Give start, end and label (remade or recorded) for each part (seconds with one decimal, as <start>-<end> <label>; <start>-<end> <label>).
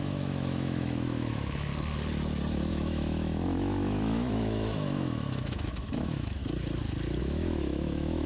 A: 0.0-1.7 remade; 1.7-2.7 recorded; 2.7-6.4 remade; 6.4-7.2 recorded; 7.2-8.3 remade